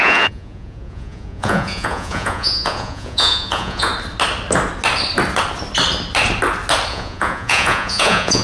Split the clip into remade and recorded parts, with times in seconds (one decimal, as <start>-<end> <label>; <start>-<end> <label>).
0.0-3.9 remade; 3.9-6.9 recorded; 6.9-8.4 remade